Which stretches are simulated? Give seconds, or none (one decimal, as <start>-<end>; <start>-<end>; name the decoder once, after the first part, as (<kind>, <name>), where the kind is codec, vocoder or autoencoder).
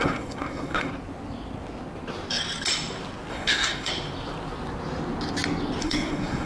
0.0-0.9 (codec, SNAC); 3.3-3.9; 5.8-6.5